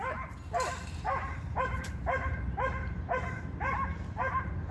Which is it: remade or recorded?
recorded